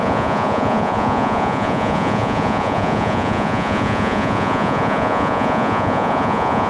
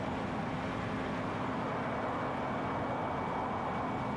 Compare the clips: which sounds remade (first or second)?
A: first